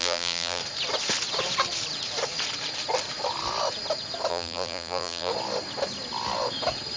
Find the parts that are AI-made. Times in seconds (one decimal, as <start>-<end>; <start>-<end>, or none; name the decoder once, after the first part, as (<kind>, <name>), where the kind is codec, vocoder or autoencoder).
0.0-0.6 (vocoder, BigVGAN v2); 4.3-5.3